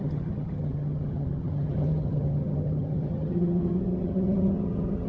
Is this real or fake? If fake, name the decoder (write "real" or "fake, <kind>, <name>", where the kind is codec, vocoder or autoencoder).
fake, vocoder, HiFi-GAN